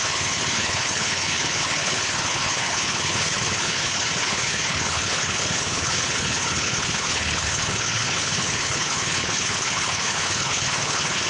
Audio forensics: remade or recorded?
remade